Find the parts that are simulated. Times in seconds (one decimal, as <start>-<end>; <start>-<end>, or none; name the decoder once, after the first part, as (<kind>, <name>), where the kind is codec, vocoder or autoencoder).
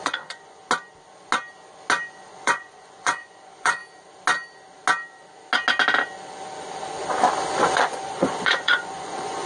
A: 0.0-0.6 (vocoder, Vocos); 2.1-3.8; 7.7-9.5